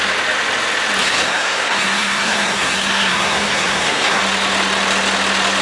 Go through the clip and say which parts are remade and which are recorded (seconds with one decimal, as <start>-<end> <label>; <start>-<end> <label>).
0.0-1.0 recorded; 1.0-4.2 remade; 4.2-5.6 recorded